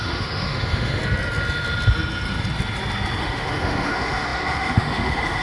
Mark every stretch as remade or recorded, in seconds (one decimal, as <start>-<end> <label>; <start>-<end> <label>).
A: 0.0-1.0 remade; 1.0-3.2 recorded; 3.2-5.4 remade